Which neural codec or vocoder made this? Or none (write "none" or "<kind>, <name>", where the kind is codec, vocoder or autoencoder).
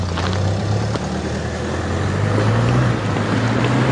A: none